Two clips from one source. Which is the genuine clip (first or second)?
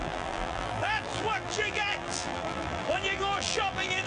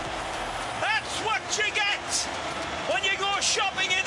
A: second